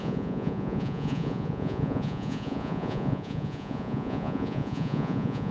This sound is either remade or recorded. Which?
remade